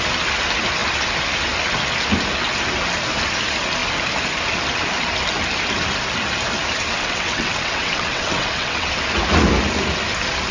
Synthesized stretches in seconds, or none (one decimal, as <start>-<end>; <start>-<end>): 7.0-8.9